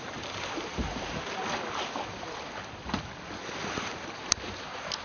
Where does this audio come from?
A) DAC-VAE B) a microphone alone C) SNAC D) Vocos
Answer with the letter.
B